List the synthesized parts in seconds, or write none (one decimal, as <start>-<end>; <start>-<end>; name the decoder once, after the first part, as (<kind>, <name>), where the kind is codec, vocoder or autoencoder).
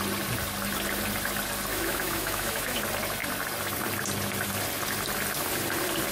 1.7-2.8 (autoencoder, DAC-VAE)